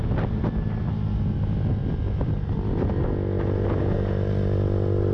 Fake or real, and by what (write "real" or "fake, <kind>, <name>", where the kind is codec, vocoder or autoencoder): real